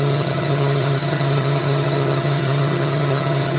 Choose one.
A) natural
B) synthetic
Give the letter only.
B